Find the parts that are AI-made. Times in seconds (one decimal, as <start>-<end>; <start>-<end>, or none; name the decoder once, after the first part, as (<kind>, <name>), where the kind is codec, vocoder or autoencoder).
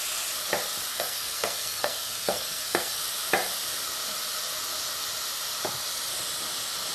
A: 0.9-3.0 (codec, SNAC)